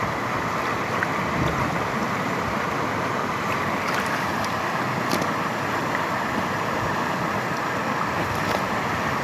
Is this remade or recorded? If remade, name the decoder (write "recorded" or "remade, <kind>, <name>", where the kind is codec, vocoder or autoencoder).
recorded